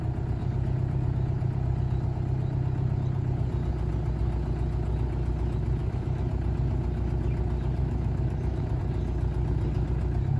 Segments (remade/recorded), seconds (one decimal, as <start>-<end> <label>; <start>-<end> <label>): 0.0-5.8 recorded; 5.8-6.3 remade; 6.3-7.8 recorded; 7.8-8.8 remade; 8.8-10.4 recorded